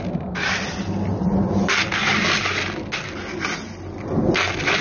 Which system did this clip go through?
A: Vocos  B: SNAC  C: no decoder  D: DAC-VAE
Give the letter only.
C